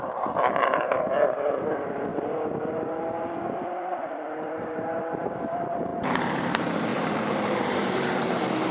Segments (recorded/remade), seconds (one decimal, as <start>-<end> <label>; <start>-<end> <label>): 0.0-8.7 remade